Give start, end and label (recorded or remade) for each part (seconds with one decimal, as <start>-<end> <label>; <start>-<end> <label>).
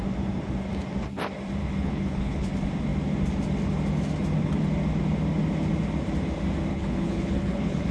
0.0-1.6 recorded; 1.6-2.5 remade; 2.5-6.7 recorded; 6.7-7.9 remade